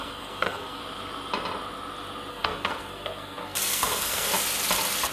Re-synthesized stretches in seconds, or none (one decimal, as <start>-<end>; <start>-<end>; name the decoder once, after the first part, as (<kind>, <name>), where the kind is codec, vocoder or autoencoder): 0.0-0.8 (codec, SNAC); 2.3-4.3